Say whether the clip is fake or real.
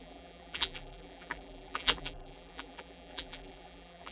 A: fake